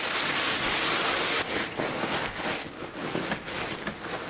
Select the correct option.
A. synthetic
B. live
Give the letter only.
B